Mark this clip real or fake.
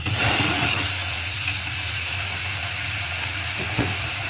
fake